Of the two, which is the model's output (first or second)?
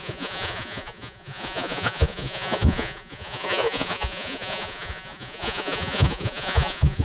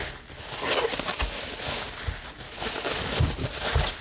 first